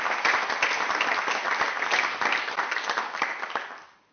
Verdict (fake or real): real